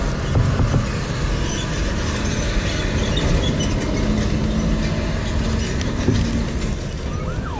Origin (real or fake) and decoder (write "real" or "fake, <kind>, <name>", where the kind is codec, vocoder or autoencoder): real